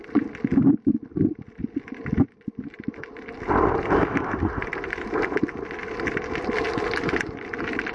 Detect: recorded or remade recorded